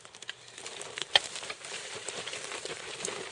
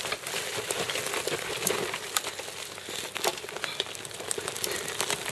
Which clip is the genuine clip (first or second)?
second